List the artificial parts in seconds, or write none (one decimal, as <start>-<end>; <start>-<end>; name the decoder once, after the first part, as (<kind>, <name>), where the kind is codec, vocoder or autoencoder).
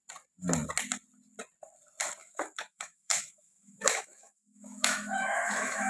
2.2-5.9 (autoencoder, DAC-VAE)